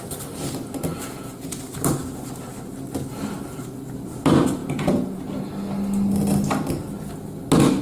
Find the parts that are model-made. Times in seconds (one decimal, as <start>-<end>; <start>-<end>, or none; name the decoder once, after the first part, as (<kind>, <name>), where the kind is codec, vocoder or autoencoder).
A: 0.9-1.6 (vocoder, Vocos); 4.6-5.2